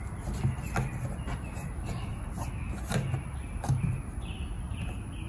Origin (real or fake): real